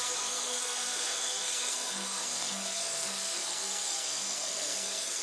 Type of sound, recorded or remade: remade